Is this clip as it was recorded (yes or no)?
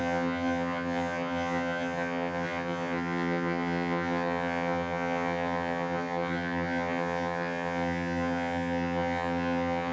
no